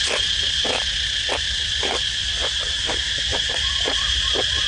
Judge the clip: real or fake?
real